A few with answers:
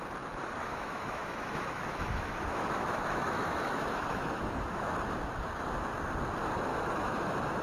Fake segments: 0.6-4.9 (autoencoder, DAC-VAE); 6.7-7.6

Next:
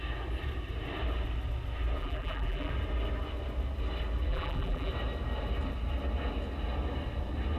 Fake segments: 2.0-2.7 (vocoder, BigVGAN v2); 4.3-4.9